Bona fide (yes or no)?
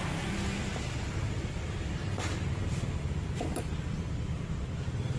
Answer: yes